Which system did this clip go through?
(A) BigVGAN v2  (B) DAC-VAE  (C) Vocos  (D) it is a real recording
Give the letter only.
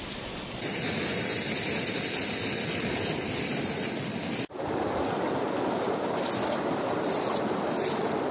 D